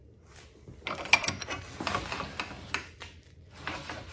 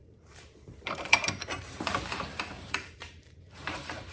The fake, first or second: second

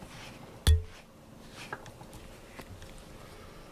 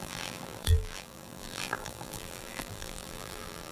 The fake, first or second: second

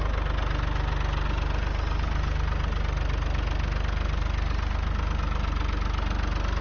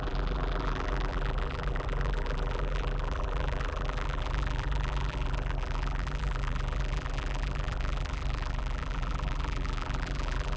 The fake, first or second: second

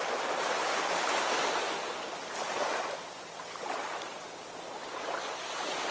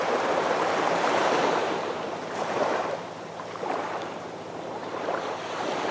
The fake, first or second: second